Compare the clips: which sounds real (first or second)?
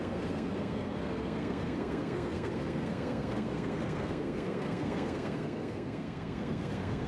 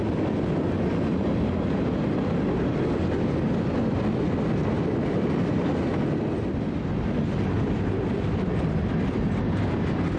second